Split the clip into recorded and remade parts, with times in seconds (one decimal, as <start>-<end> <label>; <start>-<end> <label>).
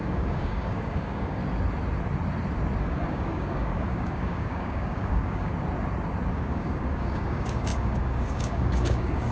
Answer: 0.0-1.4 remade; 1.4-2.8 recorded; 2.8-5.5 remade; 5.5-6.3 recorded; 6.3-9.3 remade